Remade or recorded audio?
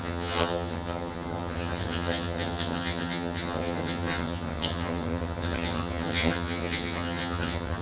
remade